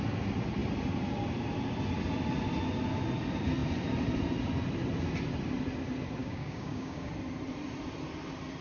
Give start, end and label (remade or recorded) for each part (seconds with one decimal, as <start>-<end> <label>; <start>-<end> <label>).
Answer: 0.0-6.2 recorded; 6.2-7.1 remade; 7.1-8.6 recorded

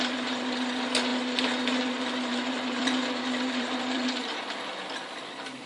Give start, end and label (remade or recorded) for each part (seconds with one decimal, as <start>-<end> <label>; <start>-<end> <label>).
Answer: 0.0-2.3 recorded; 2.3-5.7 remade

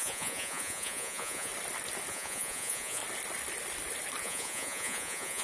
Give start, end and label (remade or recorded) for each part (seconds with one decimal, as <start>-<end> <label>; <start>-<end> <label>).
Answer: 0.0-1.5 remade; 1.5-2.1 recorded; 2.1-3.0 remade; 3.0-4.2 recorded; 4.2-5.4 remade

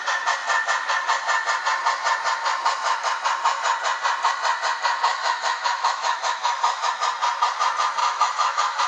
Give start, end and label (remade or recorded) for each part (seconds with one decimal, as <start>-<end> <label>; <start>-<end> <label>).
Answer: 0.0-5.1 recorded; 5.1-6.9 remade; 6.9-8.0 recorded; 8.0-8.9 remade

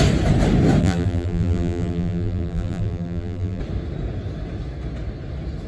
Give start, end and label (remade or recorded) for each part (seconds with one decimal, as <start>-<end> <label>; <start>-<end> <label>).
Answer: 0.0-0.8 recorded; 0.8-3.6 remade; 3.6-5.7 recorded

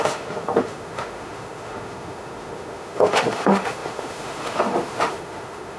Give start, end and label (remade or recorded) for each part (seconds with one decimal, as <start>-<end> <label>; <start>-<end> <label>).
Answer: 0.0-5.8 remade